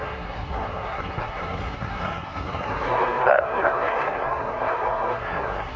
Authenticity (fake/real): fake